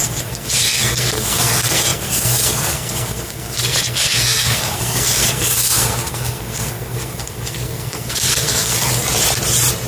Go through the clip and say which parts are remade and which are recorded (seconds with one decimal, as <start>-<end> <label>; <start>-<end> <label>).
0.0-8.9 remade; 8.9-9.9 recorded